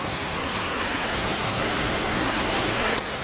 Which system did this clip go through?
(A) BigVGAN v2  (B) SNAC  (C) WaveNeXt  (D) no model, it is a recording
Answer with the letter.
B